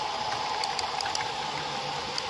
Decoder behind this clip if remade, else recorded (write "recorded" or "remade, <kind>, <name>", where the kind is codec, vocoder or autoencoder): recorded